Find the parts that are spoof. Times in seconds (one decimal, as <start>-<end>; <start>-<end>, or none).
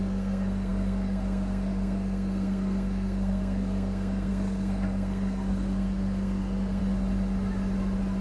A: 0.0-6.8